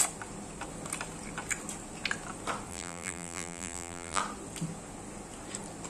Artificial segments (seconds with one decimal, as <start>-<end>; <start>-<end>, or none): 2.7-4.2